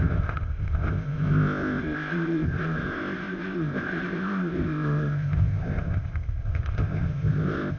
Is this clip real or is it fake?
fake